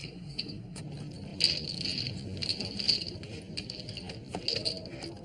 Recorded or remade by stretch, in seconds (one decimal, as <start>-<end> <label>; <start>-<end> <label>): 0.0-0.8 remade; 0.8-5.2 recorded